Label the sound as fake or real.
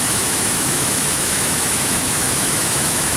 fake